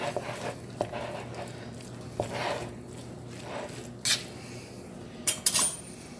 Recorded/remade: recorded